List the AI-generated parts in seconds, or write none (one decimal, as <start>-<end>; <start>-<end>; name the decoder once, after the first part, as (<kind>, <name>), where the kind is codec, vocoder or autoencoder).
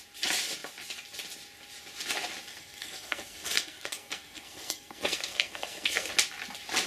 2.5-6.1 (codec, SNAC)